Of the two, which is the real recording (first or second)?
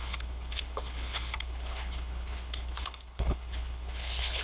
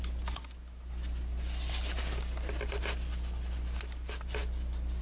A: second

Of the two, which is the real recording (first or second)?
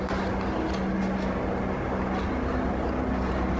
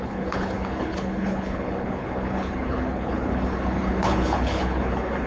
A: first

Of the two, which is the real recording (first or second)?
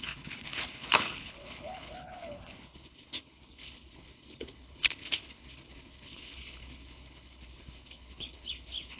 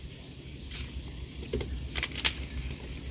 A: second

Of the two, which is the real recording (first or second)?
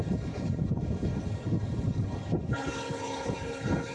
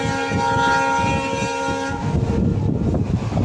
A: second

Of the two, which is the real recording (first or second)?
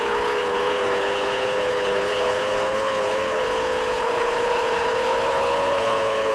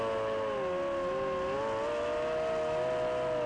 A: second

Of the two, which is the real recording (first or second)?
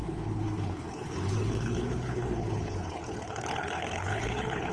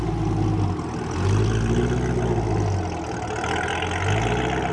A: second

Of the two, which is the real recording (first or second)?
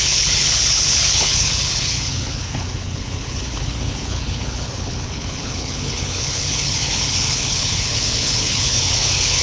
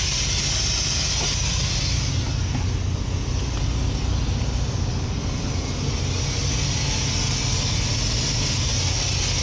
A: second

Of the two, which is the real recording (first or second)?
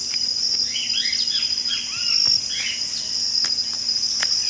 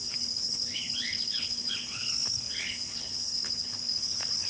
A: first